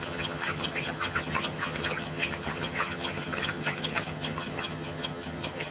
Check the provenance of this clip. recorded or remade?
remade